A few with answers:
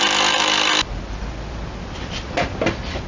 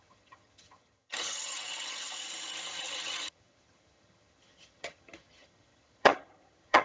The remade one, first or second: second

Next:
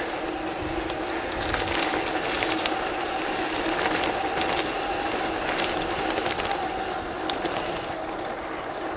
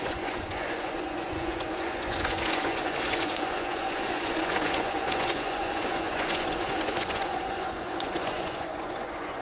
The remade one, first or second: second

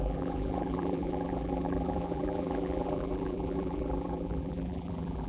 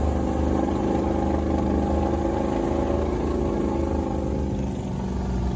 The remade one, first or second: first